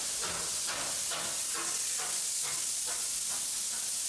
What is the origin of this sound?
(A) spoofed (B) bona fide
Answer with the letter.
B